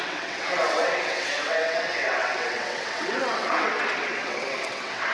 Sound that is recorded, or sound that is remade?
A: remade